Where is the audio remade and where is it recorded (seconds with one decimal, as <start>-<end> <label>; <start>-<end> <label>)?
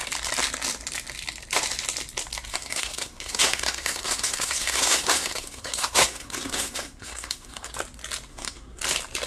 0.0-2.5 recorded; 2.5-7.7 remade; 7.7-8.3 recorded; 8.3-8.8 remade; 8.8-9.3 recorded